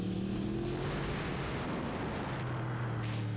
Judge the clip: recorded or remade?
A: recorded